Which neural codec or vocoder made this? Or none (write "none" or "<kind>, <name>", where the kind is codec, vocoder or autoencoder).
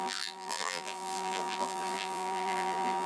vocoder, BigVGAN v2